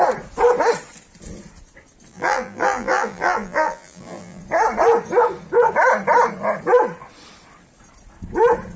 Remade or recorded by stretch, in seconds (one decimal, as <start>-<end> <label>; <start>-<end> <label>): 0.0-2.1 recorded; 2.1-4.4 remade; 4.4-8.8 recorded